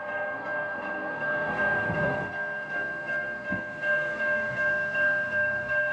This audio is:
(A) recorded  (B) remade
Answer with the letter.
B